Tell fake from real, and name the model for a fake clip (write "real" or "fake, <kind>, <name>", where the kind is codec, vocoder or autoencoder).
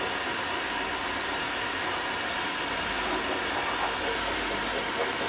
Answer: real